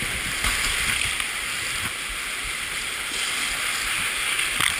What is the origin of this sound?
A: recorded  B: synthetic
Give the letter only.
A